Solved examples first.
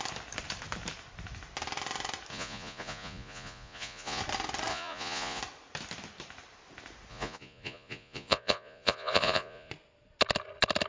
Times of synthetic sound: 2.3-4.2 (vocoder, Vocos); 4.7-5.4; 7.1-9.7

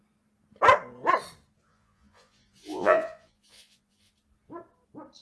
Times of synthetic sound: 1.7-4.1 (vocoder, Vocos)

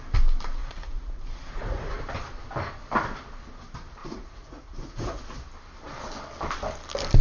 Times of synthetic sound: 0.6-2.0 (vocoder, Vocos); 4.0-5.2

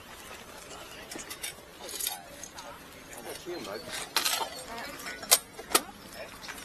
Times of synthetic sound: none

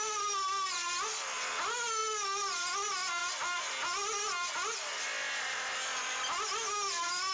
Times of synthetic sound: none

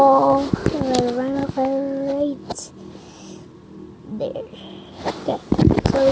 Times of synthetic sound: none

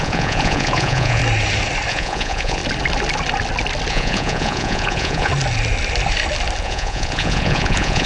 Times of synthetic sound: 0.0-1.2 (vocoder, Vocos); 1.9-2.6; 3.9-5.3; 6.6-8.1